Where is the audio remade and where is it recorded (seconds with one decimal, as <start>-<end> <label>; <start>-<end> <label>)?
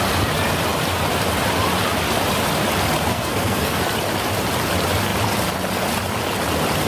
0.0-3.1 recorded; 3.1-3.8 remade; 3.8-6.9 recorded